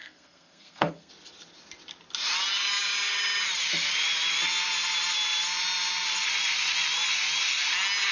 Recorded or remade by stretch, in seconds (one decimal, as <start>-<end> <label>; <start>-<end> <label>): 0.0-1.1 remade; 1.1-8.1 recorded